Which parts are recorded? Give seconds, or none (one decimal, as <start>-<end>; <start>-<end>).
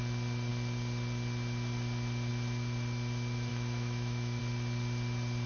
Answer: 0.0-3.5; 4.4-5.5